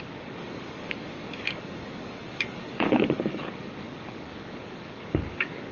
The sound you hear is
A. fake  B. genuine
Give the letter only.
A